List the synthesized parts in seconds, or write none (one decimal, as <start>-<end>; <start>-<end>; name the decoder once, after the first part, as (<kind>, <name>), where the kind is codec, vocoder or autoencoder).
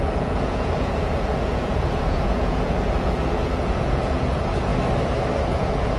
0.0-4.7 (vocoder, Vocos); 5.4-6.0